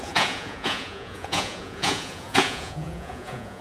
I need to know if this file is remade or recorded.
remade